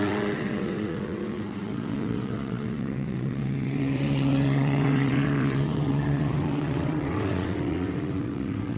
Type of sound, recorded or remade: remade